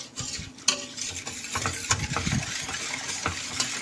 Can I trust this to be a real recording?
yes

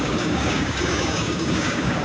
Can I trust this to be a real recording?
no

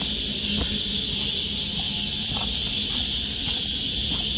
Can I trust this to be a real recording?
yes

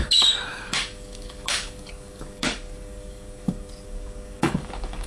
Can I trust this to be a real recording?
no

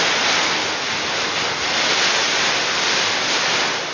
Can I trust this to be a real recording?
yes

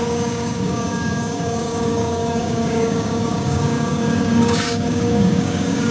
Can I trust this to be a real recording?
no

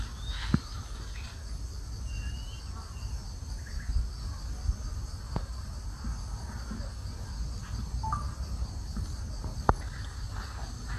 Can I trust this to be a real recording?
yes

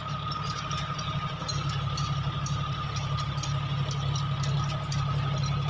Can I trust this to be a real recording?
yes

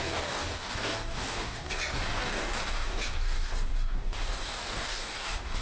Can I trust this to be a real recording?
no